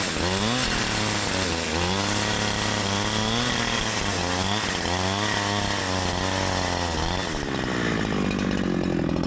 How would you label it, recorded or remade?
recorded